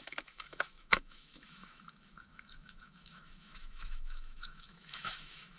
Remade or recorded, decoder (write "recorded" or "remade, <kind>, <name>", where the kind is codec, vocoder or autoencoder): remade, autoencoder, DAC-VAE